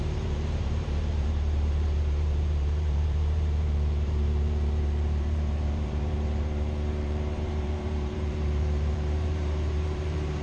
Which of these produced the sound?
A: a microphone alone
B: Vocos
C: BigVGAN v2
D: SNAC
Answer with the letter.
C